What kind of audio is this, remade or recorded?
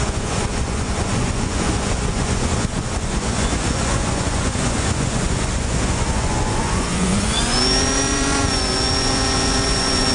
remade